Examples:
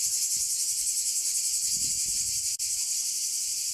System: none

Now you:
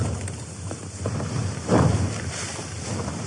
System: none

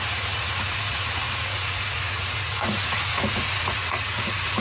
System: vocoder, Vocos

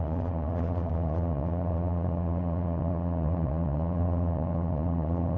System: vocoder, Vocos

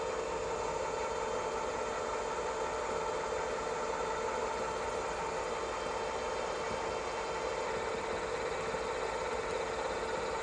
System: none